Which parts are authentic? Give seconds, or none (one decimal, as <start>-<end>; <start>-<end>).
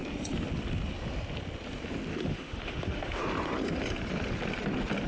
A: 0.0-2.1; 3.2-5.1